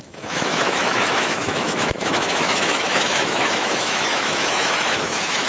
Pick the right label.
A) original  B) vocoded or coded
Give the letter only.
B